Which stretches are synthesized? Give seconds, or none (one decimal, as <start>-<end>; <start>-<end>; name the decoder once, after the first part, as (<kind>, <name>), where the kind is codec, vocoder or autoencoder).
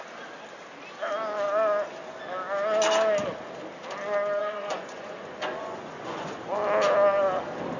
4.4-6.4 (vocoder, Vocos)